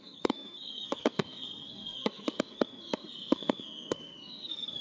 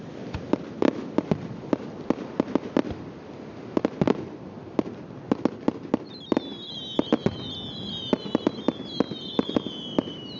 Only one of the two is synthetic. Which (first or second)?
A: first